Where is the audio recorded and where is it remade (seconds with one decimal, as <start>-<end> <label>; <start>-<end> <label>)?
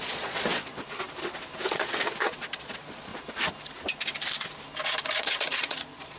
0.0-0.7 remade; 0.7-1.7 recorded; 1.7-3.1 remade; 3.1-5.2 recorded; 5.2-6.2 remade